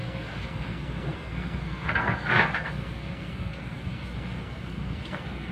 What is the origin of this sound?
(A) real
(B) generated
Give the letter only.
B